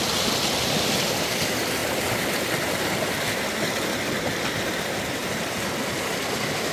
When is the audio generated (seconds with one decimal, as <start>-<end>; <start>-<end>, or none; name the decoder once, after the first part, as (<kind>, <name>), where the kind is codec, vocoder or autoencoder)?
none